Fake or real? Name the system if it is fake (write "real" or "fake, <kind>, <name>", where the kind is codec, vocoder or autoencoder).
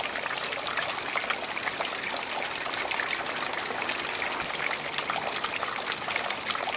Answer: real